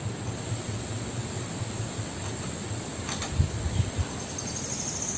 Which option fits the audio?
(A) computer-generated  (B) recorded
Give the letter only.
B